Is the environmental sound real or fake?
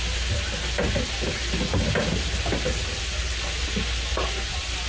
real